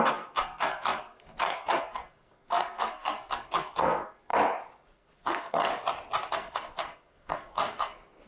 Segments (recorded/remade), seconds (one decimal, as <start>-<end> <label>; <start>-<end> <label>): 0.0-4.3 remade; 4.3-4.9 recorded; 4.9-5.7 remade; 5.7-6.3 recorded; 6.3-8.3 remade